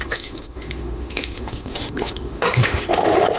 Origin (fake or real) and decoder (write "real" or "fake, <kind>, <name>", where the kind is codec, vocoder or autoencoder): fake, autoencoder, DAC-VAE